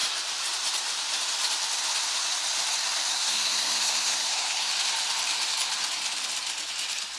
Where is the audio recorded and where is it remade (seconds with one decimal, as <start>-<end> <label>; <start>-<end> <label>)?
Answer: 0.0-3.1 recorded; 3.1-4.7 remade; 4.7-7.2 recorded